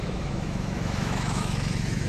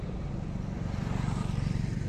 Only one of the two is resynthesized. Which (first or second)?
first